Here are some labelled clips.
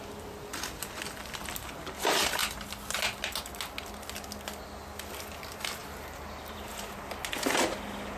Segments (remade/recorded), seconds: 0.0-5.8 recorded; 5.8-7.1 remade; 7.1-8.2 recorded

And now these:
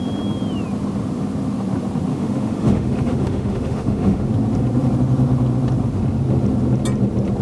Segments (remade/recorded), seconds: 0.0-2.1 recorded; 2.1-4.3 remade; 4.3-7.4 recorded

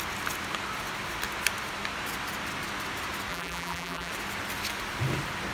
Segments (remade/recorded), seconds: 0.0-3.3 recorded; 3.3-4.1 remade; 4.1-5.5 recorded

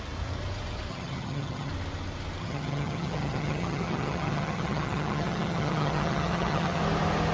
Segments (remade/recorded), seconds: 0.0-0.9 recorded; 0.9-1.7 remade; 1.7-2.4 recorded; 2.4-6.8 remade; 6.8-7.3 recorded

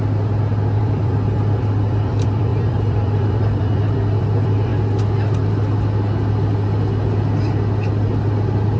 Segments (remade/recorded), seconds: 0.0-0.8 recorded; 0.8-4.7 remade; 4.7-8.4 recorded; 8.4-8.8 remade

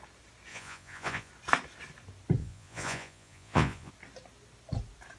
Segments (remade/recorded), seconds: 0.0-0.5 recorded; 0.5-1.3 remade; 1.3-2.4 recorded; 2.4-3.9 remade; 3.9-5.2 recorded

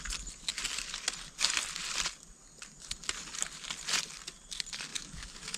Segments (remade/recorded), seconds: 0.0-4.9 recorded; 4.9-5.6 remade

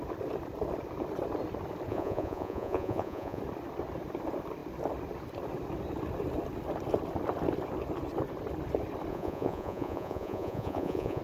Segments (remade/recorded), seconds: 0.0-1.9 recorded; 1.9-3.4 remade; 3.4-9.1 recorded; 9.1-11.2 remade